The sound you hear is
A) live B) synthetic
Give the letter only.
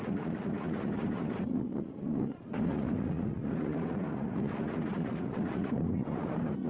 B